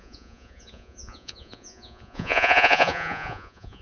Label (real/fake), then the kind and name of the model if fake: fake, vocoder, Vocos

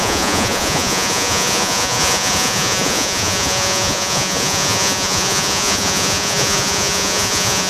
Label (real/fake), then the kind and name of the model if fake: fake, vocoder, Vocos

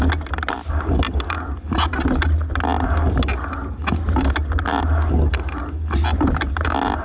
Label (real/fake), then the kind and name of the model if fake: real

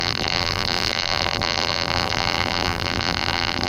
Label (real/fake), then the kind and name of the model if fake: fake, vocoder, BigVGAN v2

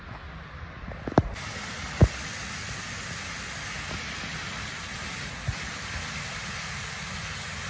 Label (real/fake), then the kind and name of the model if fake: real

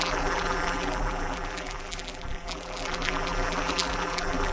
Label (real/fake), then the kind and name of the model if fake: fake, vocoder, BigVGAN v2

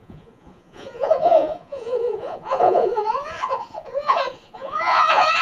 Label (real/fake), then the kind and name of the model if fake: fake, vocoder, Vocos